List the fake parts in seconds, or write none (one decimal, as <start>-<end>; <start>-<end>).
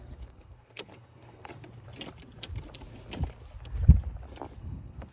0.0-1.5; 4.6-5.1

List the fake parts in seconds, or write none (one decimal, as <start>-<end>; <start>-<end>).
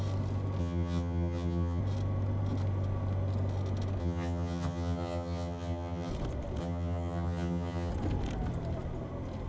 0.6-1.8; 4.0-6.1; 6.6-7.9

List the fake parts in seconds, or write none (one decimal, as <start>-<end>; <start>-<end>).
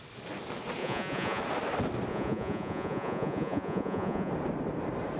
0.8-1.4; 2.1-4.3